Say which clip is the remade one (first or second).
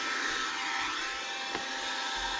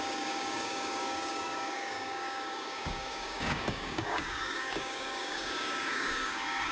second